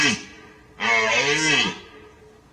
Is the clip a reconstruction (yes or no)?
no